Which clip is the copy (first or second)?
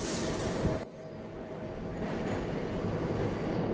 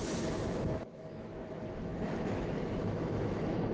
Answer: second